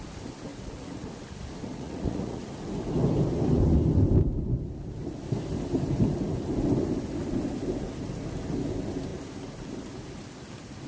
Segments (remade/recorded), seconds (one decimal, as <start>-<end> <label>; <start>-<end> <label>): 0.0-0.5 recorded; 0.5-1.1 remade; 1.1-1.7 recorded; 1.7-2.5 remade; 2.5-10.9 recorded